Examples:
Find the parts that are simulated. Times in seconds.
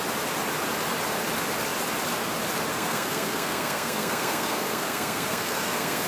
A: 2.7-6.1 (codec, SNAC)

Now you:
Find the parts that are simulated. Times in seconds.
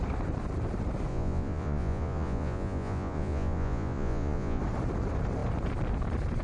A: 1.1-4.6 (vocoder, Vocos)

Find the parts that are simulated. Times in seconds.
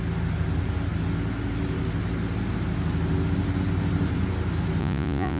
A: 4.8-5.4 (vocoder, Vocos)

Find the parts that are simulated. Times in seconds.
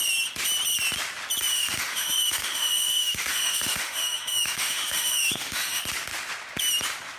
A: 1.5-5.8 (autoencoder, DAC-VAE)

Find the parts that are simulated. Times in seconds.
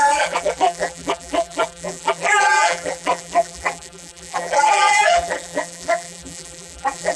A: 0.0-7.2 (vocoder, BigVGAN v2)